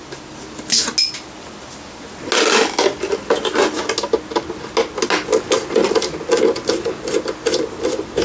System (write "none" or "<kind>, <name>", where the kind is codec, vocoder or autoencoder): none